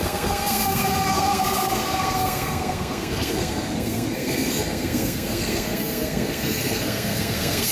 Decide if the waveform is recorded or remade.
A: remade